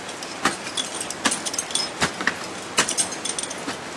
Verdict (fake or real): real